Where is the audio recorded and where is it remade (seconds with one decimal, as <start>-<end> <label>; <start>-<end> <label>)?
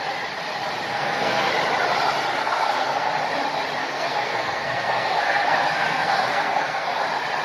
0.0-0.9 recorded; 0.9-1.5 remade; 1.5-2.4 recorded; 2.4-3.1 remade; 3.1-3.8 recorded; 3.8-7.0 remade; 7.0-7.4 recorded